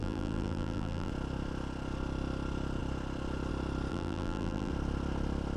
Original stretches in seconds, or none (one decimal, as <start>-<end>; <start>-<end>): 1.1-3.9; 4.7-5.6